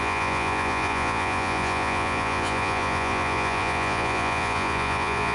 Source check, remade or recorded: remade